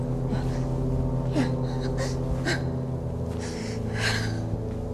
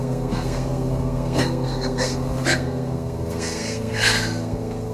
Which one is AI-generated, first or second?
second